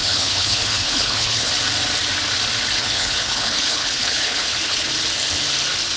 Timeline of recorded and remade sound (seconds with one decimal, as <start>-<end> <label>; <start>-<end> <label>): 0.0-1.5 remade; 1.5-2.8 recorded; 2.8-4.9 remade; 4.9-6.0 recorded